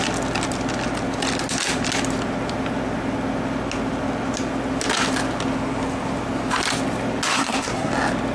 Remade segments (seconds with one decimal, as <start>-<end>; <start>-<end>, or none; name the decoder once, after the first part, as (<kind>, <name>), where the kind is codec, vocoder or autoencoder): 7.3-7.9 (codec, SNAC)